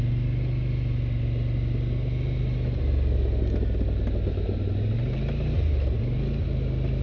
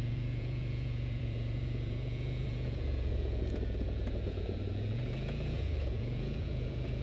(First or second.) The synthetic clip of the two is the second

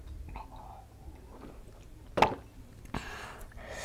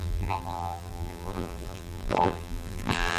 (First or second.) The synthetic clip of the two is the second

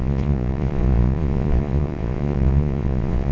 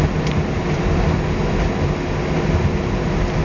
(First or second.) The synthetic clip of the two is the first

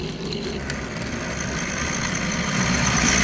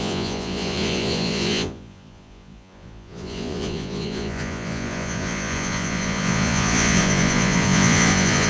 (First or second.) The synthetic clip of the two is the second